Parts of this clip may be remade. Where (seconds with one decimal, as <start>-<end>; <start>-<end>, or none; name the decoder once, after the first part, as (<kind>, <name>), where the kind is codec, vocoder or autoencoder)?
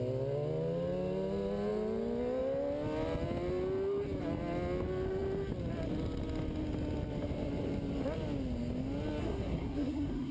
9.2-10.3 (codec, SNAC)